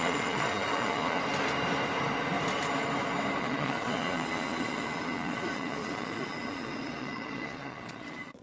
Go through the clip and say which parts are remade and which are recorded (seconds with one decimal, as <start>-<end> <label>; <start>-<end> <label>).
0.0-1.2 remade; 1.2-3.4 recorded; 3.4-8.4 remade